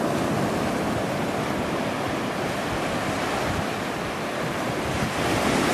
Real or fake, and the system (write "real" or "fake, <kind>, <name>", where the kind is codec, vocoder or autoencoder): real